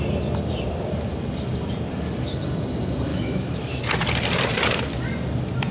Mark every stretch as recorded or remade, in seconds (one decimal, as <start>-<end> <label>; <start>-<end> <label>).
0.0-3.1 recorded; 3.1-3.8 remade; 3.8-5.7 recorded